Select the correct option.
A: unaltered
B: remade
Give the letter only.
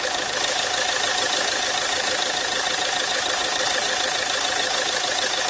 A